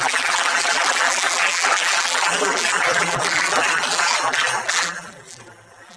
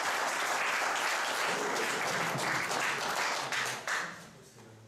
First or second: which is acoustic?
second